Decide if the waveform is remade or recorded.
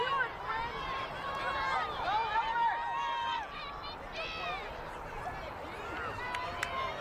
recorded